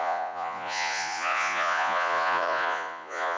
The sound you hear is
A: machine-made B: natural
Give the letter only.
A